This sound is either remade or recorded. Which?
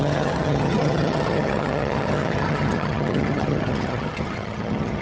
remade